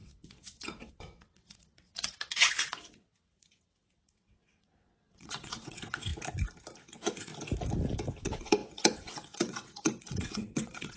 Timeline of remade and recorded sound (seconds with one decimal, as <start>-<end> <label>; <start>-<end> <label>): 0.0-6.1 remade; 6.1-6.8 recorded; 6.8-7.3 remade; 7.3-8.2 recorded; 8.2-11.0 remade